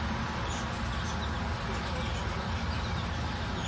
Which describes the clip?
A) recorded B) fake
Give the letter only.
A